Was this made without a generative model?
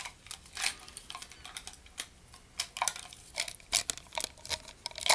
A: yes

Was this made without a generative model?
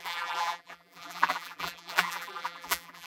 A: no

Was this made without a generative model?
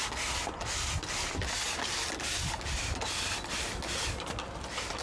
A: yes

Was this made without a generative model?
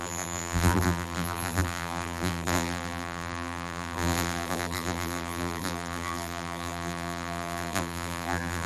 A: no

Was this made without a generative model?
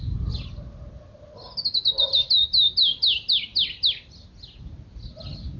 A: yes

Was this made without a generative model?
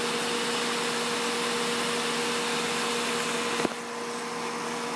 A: yes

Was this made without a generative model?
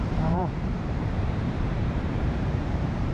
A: no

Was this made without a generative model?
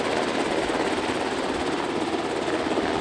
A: yes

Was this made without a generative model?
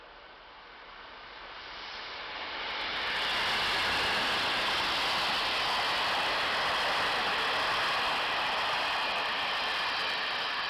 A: yes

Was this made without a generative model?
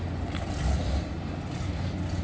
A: yes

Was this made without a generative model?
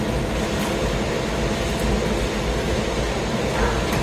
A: yes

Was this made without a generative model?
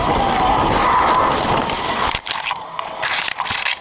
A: yes